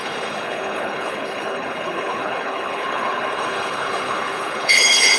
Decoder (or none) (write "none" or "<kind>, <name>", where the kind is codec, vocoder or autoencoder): codec, HILCodec